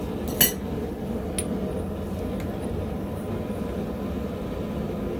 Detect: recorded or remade recorded